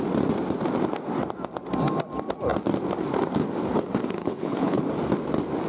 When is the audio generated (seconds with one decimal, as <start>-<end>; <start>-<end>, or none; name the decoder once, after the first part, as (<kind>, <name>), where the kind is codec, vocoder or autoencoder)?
4.2-4.8 (codec, HILCodec)